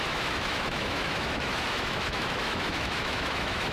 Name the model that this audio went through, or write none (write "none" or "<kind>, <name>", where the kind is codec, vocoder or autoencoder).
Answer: autoencoder, DAC-VAE